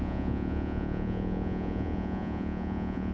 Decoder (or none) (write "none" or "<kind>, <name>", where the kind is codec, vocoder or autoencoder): vocoder, Vocos